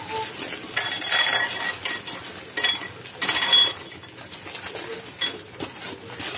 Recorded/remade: recorded